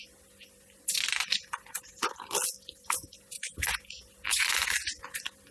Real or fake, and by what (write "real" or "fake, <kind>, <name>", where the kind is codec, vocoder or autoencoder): real